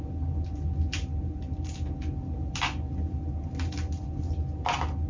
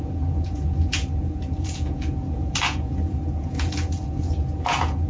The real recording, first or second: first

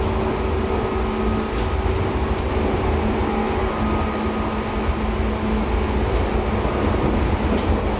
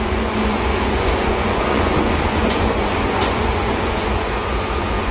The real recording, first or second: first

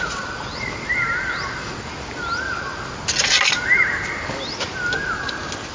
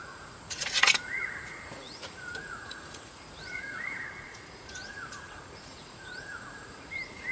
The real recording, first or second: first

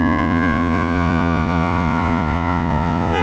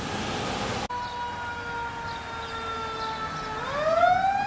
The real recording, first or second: second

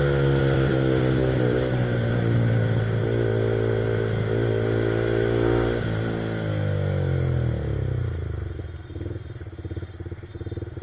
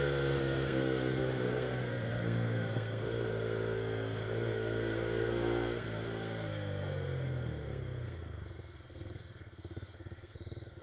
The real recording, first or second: first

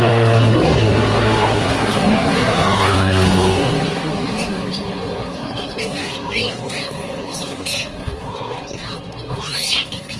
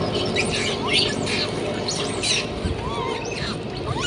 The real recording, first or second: second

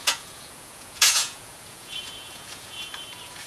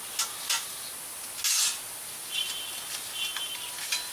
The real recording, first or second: second